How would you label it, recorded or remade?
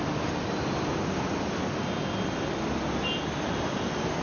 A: recorded